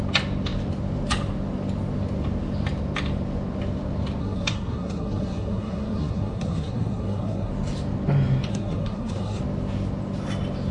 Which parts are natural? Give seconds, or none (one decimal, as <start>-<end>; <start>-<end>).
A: 0.0-4.2; 7.5-8.5; 9.4-10.7